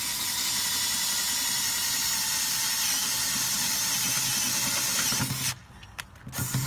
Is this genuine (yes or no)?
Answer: yes